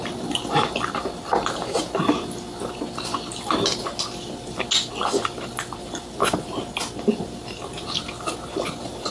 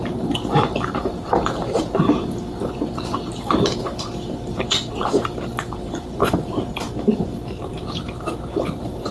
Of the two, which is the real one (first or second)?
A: first